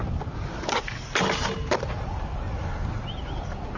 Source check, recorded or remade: recorded